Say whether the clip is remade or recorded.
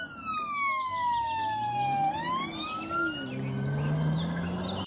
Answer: recorded